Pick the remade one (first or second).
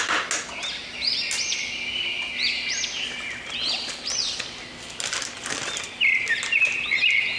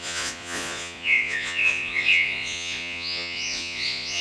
second